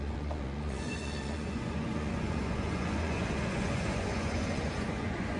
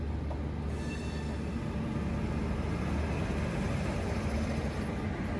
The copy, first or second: first